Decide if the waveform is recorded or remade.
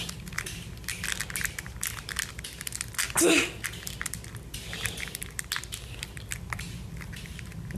recorded